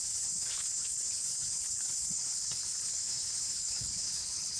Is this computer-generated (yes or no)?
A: yes